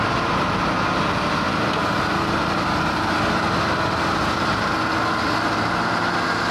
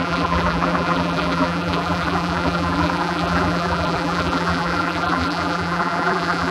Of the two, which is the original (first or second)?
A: first